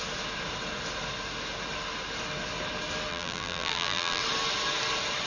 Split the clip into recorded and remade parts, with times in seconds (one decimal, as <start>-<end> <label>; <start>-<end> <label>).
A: 0.0-3.1 recorded; 3.1-4.2 remade; 4.2-5.3 recorded